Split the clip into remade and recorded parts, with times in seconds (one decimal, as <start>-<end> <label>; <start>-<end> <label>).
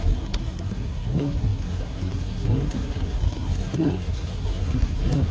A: 0.0-5.3 remade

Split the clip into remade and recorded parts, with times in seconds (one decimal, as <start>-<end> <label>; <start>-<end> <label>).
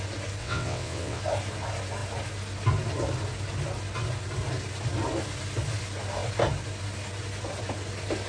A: 0.0-0.4 recorded; 0.4-1.2 remade; 1.2-8.3 recorded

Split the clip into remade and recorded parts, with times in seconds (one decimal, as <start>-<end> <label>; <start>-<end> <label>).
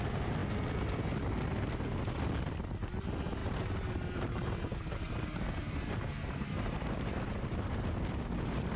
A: 0.0-3.4 recorded; 3.4-7.9 remade; 7.9-8.8 recorded